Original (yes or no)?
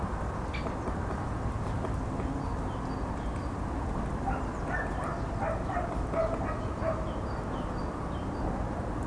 yes